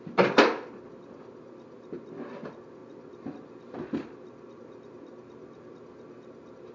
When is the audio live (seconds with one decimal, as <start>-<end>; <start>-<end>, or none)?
0.0-6.7